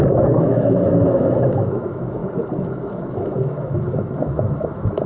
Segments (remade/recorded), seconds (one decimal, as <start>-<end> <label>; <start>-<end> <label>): 0.0-2.2 remade; 2.2-2.7 recorded; 2.7-5.1 remade